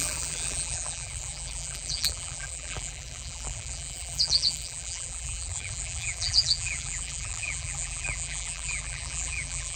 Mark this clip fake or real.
fake